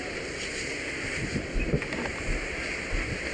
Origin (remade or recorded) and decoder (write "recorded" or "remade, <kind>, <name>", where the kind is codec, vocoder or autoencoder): recorded